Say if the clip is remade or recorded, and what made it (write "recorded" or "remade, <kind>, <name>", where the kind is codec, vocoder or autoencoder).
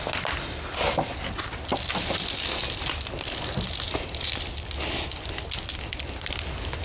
recorded